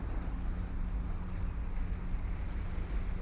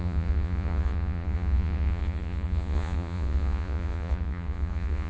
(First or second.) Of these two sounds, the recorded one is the first